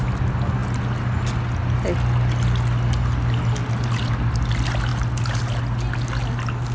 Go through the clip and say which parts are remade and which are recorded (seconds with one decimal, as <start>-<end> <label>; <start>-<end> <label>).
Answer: 0.0-6.7 recorded